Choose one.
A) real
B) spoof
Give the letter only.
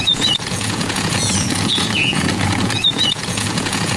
B